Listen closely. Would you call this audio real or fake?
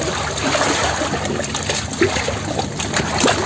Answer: real